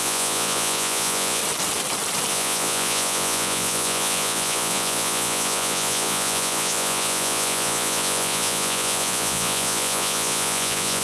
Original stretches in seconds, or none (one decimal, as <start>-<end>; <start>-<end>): 1.4-2.3